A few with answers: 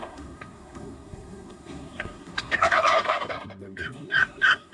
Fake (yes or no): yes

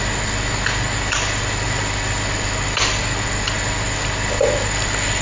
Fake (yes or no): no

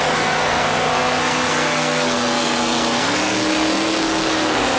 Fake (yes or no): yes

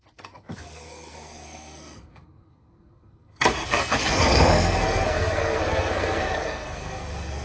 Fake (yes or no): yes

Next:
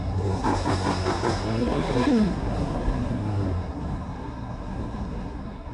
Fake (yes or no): yes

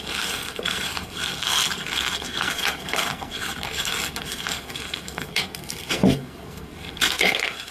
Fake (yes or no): yes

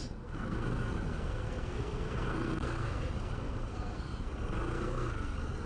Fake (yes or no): yes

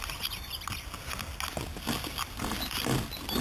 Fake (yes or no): no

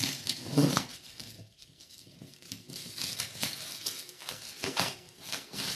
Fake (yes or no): yes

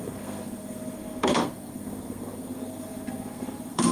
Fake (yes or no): yes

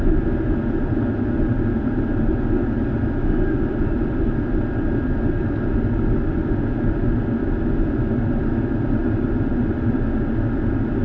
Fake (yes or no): no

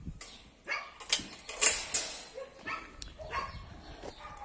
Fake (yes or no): no